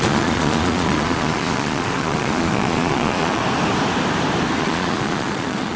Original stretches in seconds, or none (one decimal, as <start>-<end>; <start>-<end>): 3.4-4.6

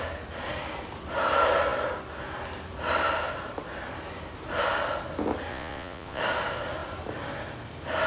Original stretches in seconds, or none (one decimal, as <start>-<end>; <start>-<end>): 0.0-5.5; 6.2-8.1